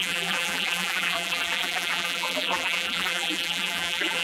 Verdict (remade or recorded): remade